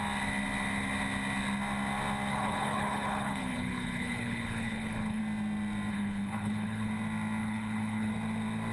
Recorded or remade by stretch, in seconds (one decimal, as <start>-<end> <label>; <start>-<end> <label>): 0.0-2.3 recorded; 2.3-5.2 remade; 5.2-5.9 recorded; 5.9-6.9 remade; 6.9-7.4 recorded; 7.4-8.1 remade; 8.1-8.7 recorded